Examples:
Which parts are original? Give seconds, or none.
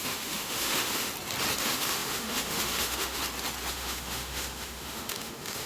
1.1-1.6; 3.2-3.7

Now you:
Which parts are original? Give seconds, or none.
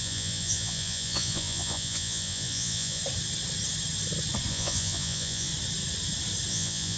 3.0-4.5; 5.5-6.5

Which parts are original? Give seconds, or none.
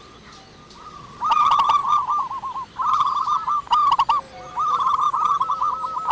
0.0-6.1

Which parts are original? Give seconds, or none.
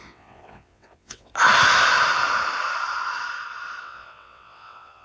1.3-3.8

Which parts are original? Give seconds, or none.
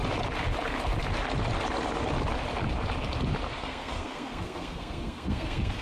0.0-3.5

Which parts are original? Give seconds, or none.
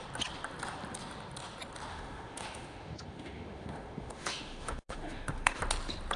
0.0-1.9; 5.6-6.2